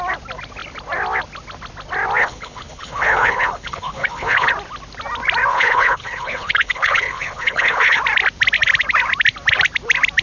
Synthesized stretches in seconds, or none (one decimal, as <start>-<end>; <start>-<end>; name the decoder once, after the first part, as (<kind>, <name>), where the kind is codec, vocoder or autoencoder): 2.2-4.5 (codec, HILCodec); 5.5-8.0